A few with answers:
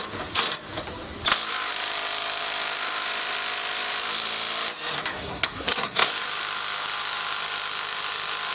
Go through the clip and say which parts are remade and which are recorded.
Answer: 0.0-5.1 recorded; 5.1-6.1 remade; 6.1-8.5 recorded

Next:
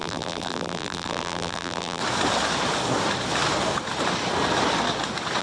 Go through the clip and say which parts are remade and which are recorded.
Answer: 0.0-2.0 remade; 2.0-5.4 recorded

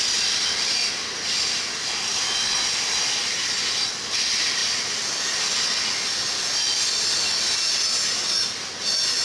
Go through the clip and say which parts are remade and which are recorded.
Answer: 0.0-9.2 recorded

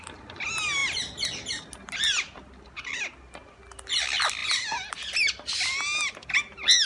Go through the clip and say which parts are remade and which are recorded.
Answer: 0.0-6.9 recorded

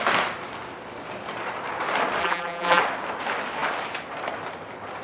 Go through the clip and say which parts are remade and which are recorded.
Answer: 0.0-2.2 recorded; 2.2-2.8 remade; 2.8-5.0 recorded

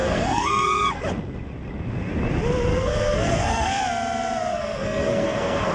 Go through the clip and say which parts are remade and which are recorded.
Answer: 0.0-1.0 remade; 1.0-2.7 recorded; 2.7-3.8 remade; 3.8-4.5 recorded; 4.5-5.7 remade